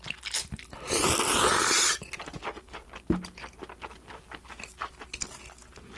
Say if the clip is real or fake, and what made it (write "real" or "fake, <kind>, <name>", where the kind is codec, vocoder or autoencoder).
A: real